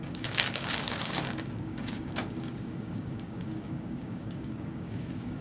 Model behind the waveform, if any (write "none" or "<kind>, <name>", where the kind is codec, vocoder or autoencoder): codec, DAC